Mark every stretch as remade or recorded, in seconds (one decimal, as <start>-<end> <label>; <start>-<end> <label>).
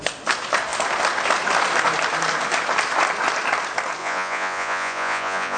0.0-4.0 recorded; 4.0-5.6 remade